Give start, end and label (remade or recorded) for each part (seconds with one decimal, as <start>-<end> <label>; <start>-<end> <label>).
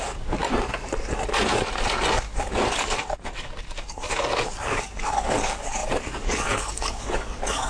0.0-0.4 remade; 0.4-2.1 recorded; 2.1-7.7 remade